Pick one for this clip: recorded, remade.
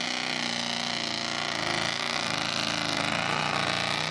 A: recorded